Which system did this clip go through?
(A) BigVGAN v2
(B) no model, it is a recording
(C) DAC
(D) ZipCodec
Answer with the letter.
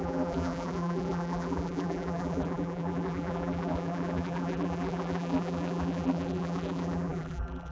A